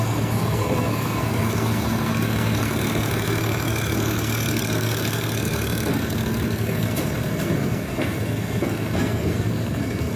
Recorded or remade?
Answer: remade